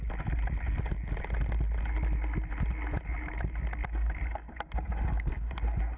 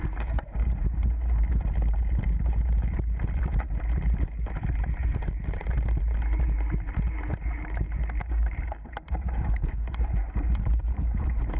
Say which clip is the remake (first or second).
second